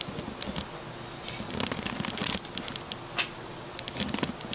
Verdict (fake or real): real